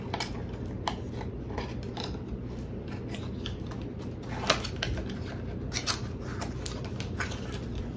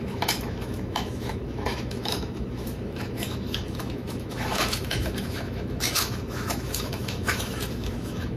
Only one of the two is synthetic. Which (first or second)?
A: second